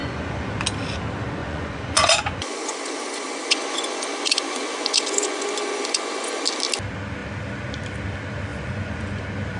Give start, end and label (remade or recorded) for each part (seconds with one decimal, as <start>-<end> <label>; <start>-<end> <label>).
0.0-0.6 remade; 0.6-1.4 recorded; 1.4-6.4 remade; 6.4-8.5 recorded; 8.5-9.2 remade; 9.2-9.6 recorded